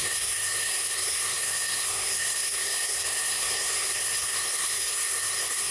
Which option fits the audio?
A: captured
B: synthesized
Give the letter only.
B